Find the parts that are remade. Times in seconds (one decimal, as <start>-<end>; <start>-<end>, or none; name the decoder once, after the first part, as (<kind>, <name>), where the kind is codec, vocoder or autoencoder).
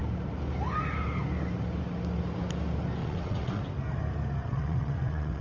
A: 3.0-3.6 (vocoder, WaveNeXt); 4.4-5.4